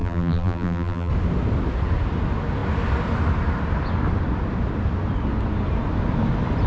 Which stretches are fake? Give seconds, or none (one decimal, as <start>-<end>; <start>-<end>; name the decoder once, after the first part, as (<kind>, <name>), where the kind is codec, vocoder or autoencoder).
0.0-1.1 (vocoder, BigVGAN v2)